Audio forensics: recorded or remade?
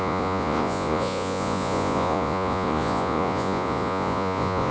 remade